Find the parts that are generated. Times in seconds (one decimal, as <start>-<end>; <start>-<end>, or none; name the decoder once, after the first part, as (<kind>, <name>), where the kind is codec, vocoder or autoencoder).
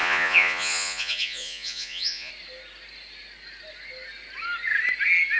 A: 0.0-2.3 (vocoder, Vocos)